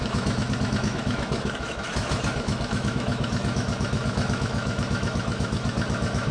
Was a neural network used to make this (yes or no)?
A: yes